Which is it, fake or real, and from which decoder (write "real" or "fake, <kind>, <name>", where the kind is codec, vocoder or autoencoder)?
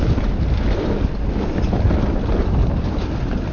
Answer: real